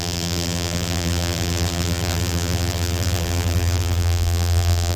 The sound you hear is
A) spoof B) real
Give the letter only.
A